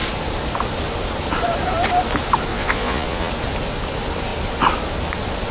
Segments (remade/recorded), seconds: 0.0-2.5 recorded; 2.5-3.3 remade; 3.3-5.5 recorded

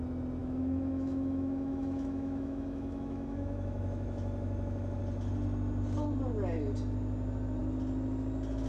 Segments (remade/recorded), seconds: 0.0-0.4 recorded; 0.4-5.0 remade; 5.0-8.7 recorded

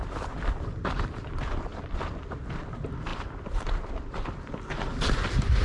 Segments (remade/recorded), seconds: 0.0-5.6 remade

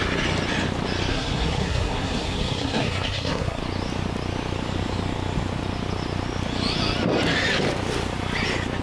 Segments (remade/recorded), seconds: 0.0-1.1 recorded; 1.1-3.6 remade; 3.6-8.8 recorded